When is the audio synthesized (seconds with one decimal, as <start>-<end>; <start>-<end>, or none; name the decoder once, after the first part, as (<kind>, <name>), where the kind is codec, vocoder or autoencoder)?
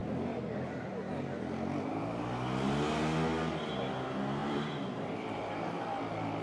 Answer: 4.4-5.8 (vocoder, BigVGAN v2)